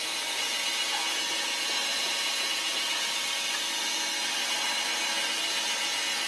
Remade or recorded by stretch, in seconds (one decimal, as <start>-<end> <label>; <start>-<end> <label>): 0.0-4.4 remade; 4.4-5.8 recorded; 5.8-6.3 remade